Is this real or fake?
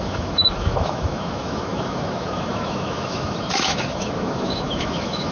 fake